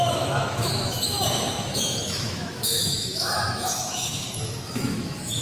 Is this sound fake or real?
fake